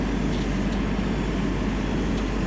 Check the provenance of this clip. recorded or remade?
recorded